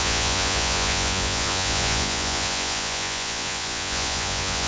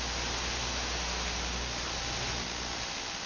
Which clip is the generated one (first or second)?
first